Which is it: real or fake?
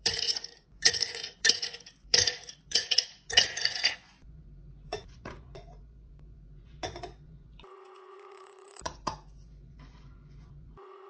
fake